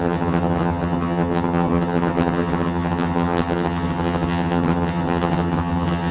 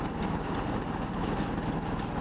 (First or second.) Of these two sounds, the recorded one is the second